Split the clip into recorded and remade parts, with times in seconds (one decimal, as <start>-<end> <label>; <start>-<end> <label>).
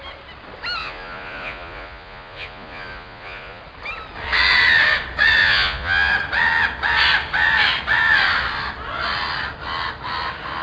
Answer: 0.0-0.8 recorded; 0.8-3.6 remade; 3.6-5.4 recorded; 5.4-6.1 remade; 6.1-10.6 recorded